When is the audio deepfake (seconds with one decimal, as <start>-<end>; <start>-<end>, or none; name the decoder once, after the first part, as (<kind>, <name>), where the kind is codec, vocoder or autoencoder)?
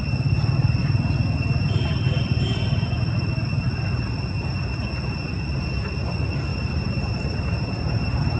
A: 6.5-8.4 (vocoder, BigVGAN v2)